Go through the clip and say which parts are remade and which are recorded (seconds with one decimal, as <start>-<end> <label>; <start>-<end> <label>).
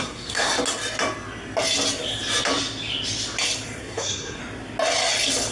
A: 0.0-0.5 remade; 0.5-3.8 recorded; 3.8-4.4 remade; 4.4-5.5 recorded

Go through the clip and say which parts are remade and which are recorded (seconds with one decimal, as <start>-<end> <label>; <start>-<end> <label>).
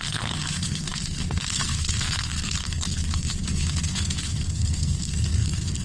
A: 0.0-5.8 remade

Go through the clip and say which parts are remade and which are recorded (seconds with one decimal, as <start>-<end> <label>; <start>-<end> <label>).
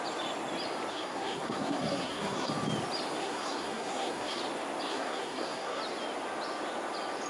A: 0.0-0.9 recorded; 0.9-2.5 remade; 2.5-3.2 recorded; 3.2-4.4 remade; 4.4-4.9 recorded; 4.9-5.8 remade; 5.8-7.3 recorded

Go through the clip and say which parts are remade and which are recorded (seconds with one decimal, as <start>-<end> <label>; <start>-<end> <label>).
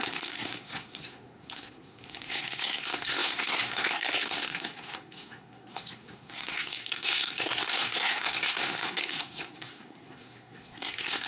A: 0.0-11.3 remade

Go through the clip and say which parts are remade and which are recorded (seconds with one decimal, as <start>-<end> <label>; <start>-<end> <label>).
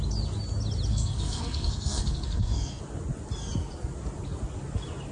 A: 0.0-0.9 recorded; 0.9-2.8 remade; 2.8-5.1 recorded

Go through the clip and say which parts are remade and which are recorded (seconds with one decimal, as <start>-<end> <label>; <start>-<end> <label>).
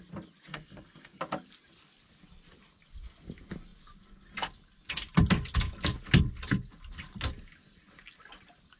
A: 0.0-0.5 recorded; 0.5-1.2 remade; 1.2-8.8 recorded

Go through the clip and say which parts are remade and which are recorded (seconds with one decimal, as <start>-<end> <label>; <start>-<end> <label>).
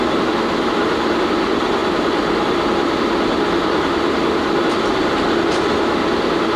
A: 0.0-6.6 recorded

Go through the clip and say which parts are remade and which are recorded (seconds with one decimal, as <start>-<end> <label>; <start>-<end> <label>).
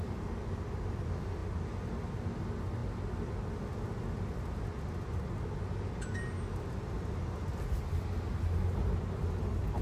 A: 0.0-9.8 recorded